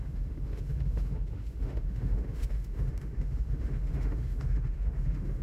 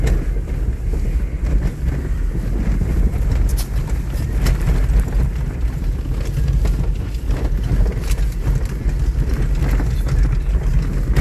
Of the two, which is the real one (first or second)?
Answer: second